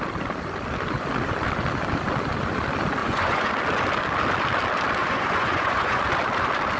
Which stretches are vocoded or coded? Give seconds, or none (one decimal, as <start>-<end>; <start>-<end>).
3.0-3.5; 5.0-6.0